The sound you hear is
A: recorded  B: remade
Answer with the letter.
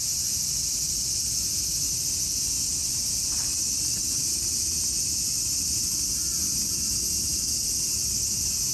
A